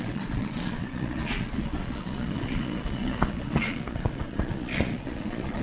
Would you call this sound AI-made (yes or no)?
yes